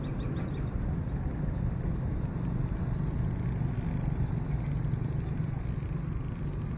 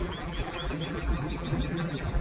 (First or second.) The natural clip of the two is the first